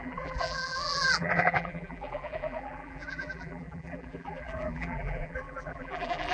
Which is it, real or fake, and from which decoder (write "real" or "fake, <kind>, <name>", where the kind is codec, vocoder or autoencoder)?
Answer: fake, vocoder, BigVGAN v2